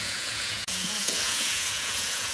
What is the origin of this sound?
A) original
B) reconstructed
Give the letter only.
B